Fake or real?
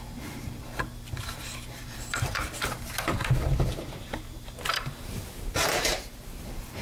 fake